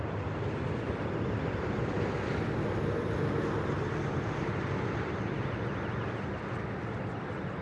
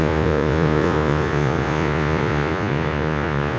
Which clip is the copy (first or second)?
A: second